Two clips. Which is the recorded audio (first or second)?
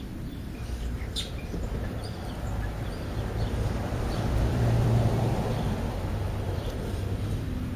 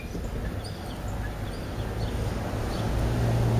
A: second